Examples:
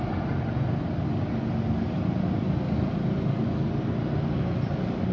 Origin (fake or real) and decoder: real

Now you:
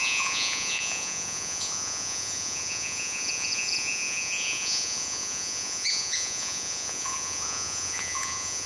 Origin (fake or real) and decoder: fake, vocoder, Vocos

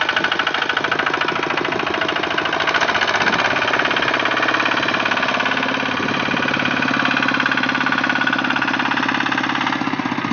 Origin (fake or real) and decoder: real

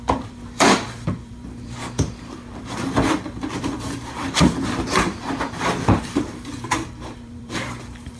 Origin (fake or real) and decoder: fake, vocoder, BigVGAN v2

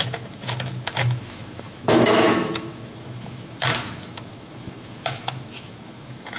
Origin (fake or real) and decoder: fake, autoencoder, DAC-VAE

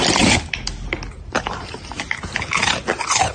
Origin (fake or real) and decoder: real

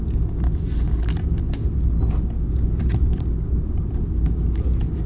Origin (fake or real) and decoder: real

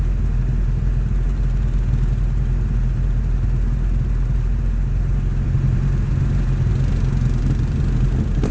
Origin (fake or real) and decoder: real